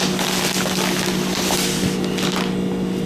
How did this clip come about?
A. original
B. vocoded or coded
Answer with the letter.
A